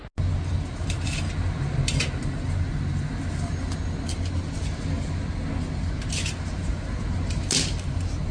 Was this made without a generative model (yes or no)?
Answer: yes